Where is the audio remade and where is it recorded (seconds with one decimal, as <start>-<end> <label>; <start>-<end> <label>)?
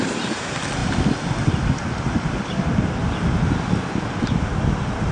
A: 0.0-5.1 recorded